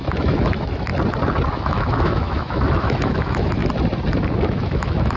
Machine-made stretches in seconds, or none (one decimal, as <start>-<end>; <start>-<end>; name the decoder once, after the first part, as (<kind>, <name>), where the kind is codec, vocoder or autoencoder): 0.0-0.9 (autoencoder, DAC-VAE); 1.5-3.6; 4.4-5.2

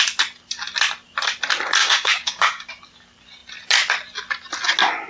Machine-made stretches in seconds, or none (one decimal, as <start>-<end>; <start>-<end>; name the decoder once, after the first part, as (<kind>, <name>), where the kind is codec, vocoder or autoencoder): 1.8-2.7 (codec, DAC)

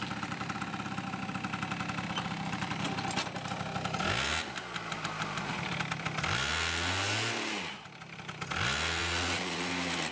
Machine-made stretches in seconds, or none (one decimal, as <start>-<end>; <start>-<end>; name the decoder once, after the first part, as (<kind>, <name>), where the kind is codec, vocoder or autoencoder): 9.0-9.7 (vocoder, Vocos)

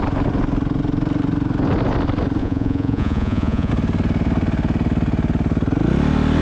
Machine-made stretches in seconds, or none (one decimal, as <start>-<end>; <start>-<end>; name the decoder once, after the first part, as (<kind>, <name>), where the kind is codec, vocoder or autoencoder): 2.4-3.7 (vocoder, Vocos)

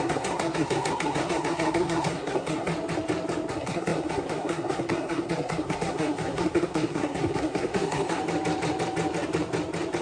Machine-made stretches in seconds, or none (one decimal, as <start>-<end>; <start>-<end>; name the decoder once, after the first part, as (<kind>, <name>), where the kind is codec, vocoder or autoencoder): 0.0-2.7 (codec, SNAC); 3.5-8.2

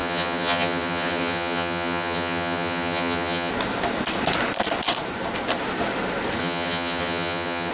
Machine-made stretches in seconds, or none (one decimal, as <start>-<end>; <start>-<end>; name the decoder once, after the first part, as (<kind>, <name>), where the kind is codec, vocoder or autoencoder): 0.0-3.5 (vocoder, HiFi-GAN); 6.4-7.7

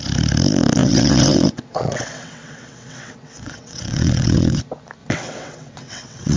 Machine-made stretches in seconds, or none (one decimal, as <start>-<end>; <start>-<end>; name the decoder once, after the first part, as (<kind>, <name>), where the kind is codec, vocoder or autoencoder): 0.8-4.6 (vocoder, WaveNeXt); 5.0-6.4